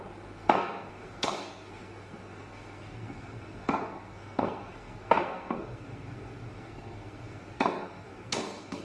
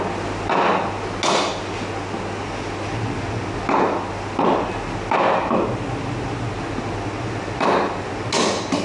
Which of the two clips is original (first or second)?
second